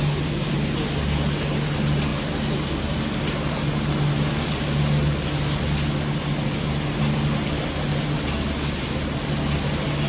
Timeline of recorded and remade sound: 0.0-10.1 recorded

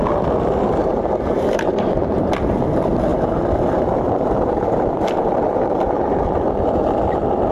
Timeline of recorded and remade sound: 0.0-0.8 recorded; 0.8-2.3 remade; 2.3-3.1 recorded; 3.1-6.2 remade; 6.2-7.5 recorded

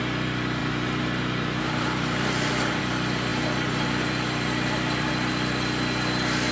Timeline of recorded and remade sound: 0.0-0.6 recorded; 0.6-2.8 remade; 2.8-3.3 recorded; 3.3-5.1 remade; 5.1-6.5 recorded

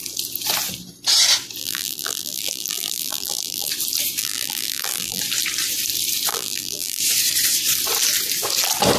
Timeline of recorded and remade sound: 0.0-1.6 recorded; 1.6-3.7 remade; 3.7-4.2 recorded; 4.2-5.2 remade; 5.2-6.3 recorded; 6.3-7.0 remade; 7.0-9.0 recorded

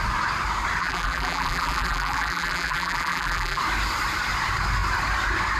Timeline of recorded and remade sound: 0.0-0.8 recorded; 0.8-3.6 remade; 3.6-5.6 recorded